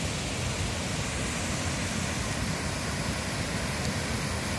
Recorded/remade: recorded